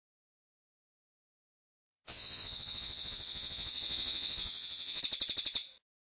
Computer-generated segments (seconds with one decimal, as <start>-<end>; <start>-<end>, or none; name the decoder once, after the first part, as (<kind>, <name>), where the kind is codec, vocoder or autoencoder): 1.3-5.0 (vocoder, Vocos)